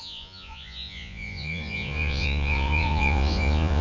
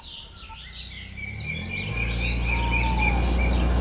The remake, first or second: first